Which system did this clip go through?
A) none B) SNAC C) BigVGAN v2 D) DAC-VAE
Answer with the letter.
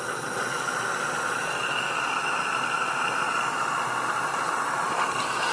A